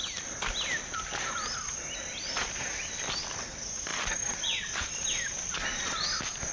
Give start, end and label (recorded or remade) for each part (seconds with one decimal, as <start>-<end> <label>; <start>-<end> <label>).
0.0-6.5 recorded